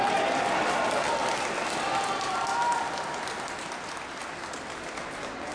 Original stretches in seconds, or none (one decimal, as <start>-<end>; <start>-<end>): 0.0-5.5